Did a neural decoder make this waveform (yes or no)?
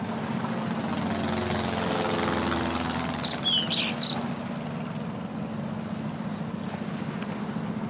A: no